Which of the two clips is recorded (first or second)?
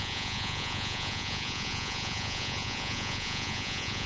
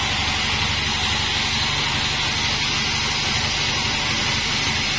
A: second